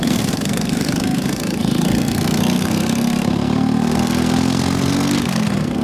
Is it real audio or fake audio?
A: fake